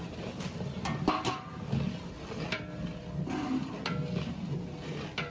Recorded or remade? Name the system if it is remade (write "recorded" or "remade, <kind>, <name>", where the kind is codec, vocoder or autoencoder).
recorded